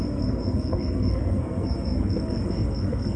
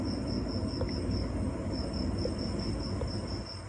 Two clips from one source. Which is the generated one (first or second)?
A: first